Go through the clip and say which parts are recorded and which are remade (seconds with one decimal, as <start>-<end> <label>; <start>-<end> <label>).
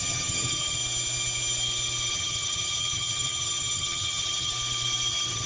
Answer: 0.0-0.8 remade; 0.8-2.1 recorded; 2.1-4.5 remade; 4.5-5.1 recorded; 5.1-5.5 remade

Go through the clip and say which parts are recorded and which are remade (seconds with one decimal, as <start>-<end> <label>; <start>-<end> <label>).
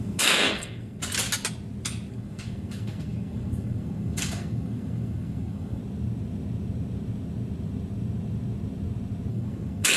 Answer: 0.0-1.0 remade; 1.0-2.1 recorded; 2.1-5.8 remade; 5.8-9.3 recorded; 9.3-10.0 remade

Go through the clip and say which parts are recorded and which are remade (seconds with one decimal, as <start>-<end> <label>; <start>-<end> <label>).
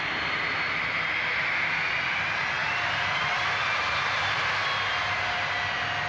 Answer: 0.0-6.1 recorded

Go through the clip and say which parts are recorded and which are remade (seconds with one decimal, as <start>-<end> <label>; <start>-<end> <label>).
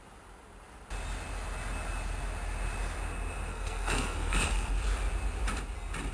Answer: 0.0-3.5 recorded; 3.5-4.7 remade; 4.7-6.1 recorded